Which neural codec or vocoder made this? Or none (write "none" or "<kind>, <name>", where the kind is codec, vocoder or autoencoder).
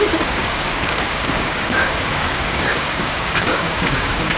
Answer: codec, DAC